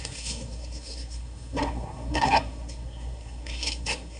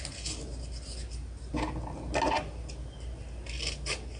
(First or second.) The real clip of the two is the second